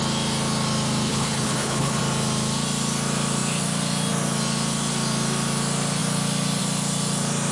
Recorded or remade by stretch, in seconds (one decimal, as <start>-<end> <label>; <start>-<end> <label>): 0.0-1.1 recorded; 1.1-2.0 remade; 2.0-7.5 recorded